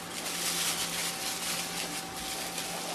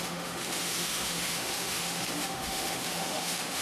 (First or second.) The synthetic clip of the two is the second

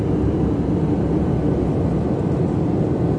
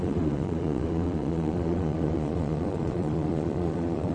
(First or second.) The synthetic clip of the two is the second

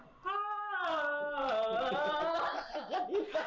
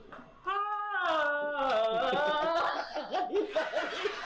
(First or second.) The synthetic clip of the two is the first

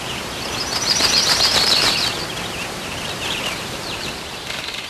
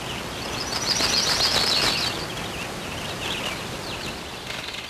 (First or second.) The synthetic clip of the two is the first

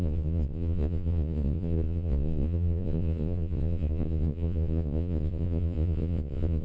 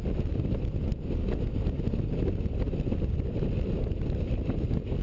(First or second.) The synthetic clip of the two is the first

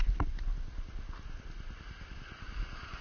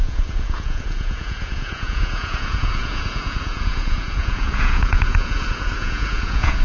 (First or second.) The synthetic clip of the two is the second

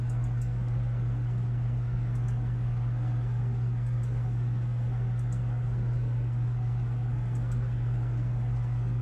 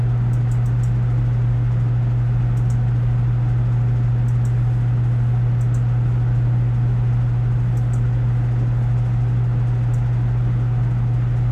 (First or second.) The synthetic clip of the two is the first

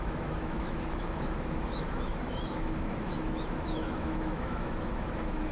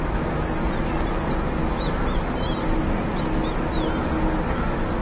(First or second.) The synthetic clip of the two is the first